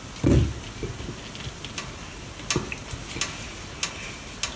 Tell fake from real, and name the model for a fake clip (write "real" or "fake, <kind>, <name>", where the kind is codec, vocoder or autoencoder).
real